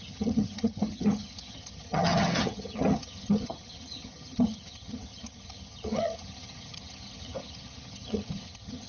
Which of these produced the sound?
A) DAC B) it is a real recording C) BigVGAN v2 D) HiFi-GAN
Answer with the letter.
D